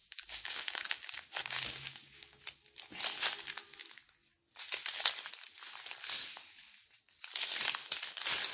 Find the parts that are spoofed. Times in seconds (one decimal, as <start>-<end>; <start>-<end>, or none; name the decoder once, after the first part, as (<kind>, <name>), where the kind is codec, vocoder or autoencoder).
0.0-2.4 (codec, DAC)